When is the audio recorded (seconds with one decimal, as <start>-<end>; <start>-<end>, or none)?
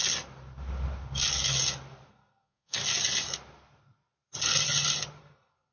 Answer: 0.0-2.1; 2.8-5.2